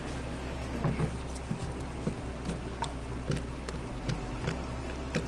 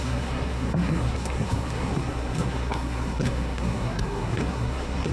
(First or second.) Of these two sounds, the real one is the first